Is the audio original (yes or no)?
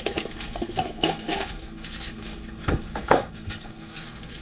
no